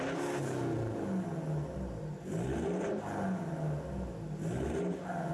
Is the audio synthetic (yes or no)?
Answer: no